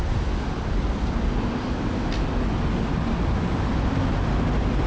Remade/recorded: recorded